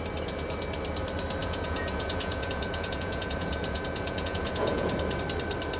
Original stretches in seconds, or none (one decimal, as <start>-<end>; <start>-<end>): 0.0-1.4; 4.9-5.8